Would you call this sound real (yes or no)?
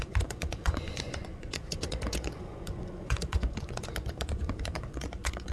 no